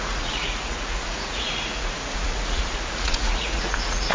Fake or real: fake